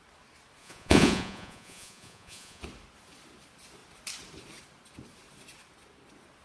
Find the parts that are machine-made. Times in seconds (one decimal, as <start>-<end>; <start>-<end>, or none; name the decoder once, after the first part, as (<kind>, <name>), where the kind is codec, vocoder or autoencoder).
0.6-2.6 (vocoder, Vocos)

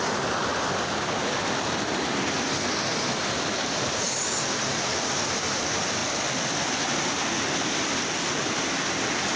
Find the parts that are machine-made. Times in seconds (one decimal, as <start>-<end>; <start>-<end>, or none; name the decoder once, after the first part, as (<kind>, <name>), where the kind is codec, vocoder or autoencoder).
none